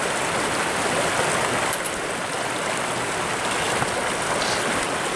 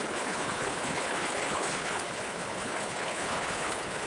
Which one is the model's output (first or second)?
second